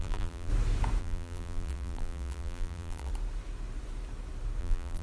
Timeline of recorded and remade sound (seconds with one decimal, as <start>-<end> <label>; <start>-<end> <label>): 0.0-0.5 remade; 0.5-1.0 recorded; 1.0-3.1 remade; 3.1-4.6 recorded; 4.6-5.0 remade